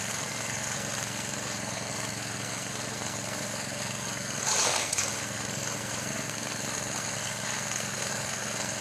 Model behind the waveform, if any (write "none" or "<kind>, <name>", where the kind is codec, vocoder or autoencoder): codec, SNAC